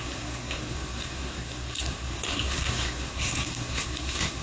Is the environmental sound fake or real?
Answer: fake